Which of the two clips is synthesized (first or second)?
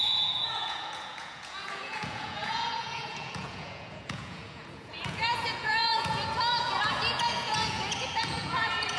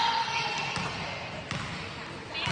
first